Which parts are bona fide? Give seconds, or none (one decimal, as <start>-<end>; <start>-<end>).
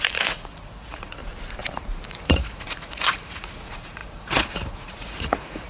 1.2-2.1